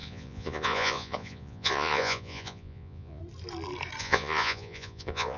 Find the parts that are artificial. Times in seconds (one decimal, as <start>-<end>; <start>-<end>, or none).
0.0-3.2; 4.0-5.4